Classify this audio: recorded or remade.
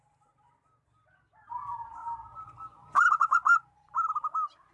recorded